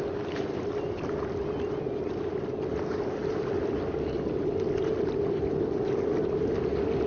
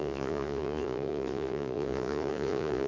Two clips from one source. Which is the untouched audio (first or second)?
first